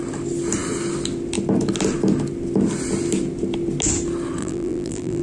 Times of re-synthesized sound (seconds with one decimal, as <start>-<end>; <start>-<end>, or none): 4.4-5.2